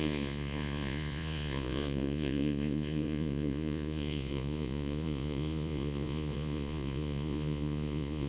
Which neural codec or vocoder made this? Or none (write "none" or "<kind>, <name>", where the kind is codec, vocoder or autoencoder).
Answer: vocoder, Vocos